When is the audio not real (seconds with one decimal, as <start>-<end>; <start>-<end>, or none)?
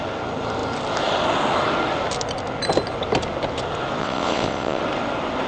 4.0-4.8